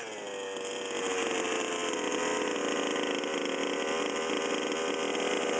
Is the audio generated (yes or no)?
no